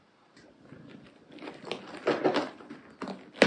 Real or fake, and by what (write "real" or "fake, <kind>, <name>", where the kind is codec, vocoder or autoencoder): real